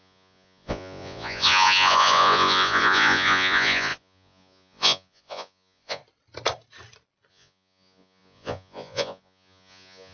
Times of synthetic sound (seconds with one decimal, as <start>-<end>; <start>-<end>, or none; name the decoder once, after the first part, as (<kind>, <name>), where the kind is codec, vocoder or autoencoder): 0.0-6.0 (vocoder, Vocos); 7.3-10.1